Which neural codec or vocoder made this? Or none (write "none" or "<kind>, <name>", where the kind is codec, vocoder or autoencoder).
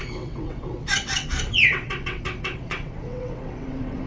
vocoder, WaveNeXt